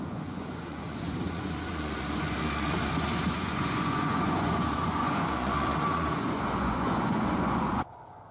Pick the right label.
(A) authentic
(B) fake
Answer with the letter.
B